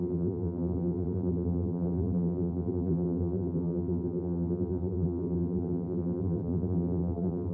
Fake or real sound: fake